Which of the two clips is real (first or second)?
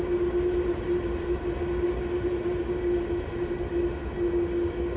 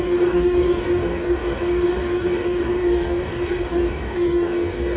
first